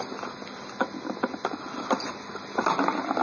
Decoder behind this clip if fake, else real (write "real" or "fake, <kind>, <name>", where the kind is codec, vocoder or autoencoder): real